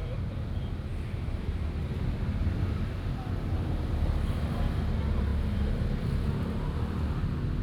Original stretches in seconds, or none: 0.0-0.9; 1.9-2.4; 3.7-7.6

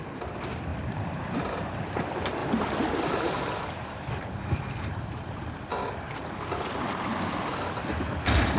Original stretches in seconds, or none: 0.0-0.7; 2.0-2.4; 4.1-8.6

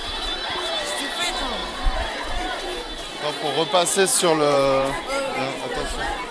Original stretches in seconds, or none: 1.0-1.6; 2.6-4.1; 5.0-6.3

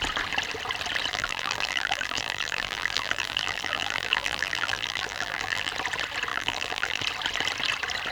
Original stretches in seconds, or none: 0.0-1.1; 5.7-6.3; 7.0-8.1

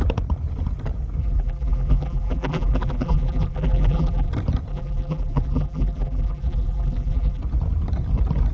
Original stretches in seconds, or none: 0.0-1.2; 4.3-4.7; 7.4-8.5

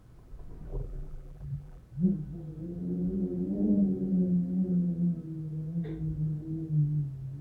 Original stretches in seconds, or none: 0.0-0.7; 1.8-7.4